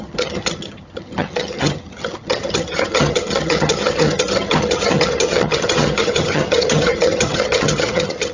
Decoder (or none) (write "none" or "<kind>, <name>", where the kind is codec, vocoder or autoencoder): vocoder, HiFi-GAN